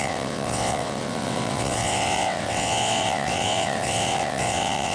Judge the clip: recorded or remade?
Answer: remade